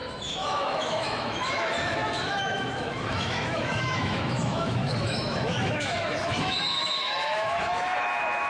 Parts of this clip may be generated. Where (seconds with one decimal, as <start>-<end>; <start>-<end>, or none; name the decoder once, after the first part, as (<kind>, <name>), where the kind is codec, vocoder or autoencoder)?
0.0-8.5 (autoencoder, DAC-VAE)